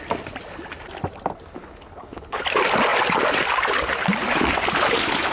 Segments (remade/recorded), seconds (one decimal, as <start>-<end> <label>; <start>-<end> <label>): 0.0-1.6 recorded; 1.6-2.4 remade; 2.4-5.3 recorded